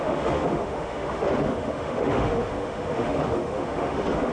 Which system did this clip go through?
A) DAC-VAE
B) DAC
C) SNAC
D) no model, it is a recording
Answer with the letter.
A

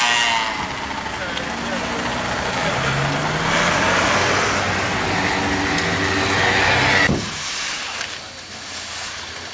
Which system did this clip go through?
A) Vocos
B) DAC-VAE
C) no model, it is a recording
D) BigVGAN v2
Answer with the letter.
C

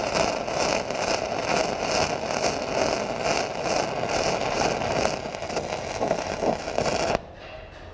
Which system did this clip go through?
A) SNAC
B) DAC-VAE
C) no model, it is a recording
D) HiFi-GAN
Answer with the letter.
C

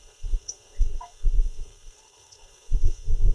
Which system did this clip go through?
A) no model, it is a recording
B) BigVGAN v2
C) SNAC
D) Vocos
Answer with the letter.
C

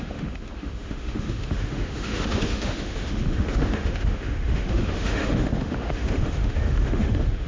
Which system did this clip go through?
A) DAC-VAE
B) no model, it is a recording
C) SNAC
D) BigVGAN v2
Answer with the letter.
A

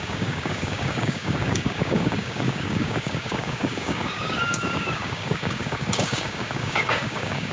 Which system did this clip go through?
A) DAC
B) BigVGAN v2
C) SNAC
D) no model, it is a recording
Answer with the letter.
A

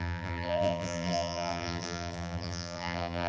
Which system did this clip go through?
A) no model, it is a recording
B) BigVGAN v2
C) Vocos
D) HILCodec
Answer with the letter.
B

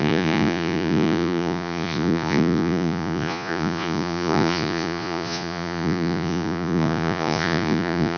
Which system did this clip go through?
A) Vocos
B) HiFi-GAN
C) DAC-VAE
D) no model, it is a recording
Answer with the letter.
A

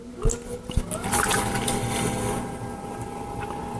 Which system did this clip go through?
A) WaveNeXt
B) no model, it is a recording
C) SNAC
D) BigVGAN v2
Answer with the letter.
B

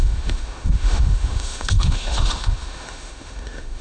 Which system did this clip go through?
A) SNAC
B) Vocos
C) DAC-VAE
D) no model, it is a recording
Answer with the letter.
C